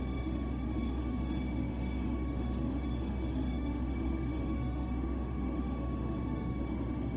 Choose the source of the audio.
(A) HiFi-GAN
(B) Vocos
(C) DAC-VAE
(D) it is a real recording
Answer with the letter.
C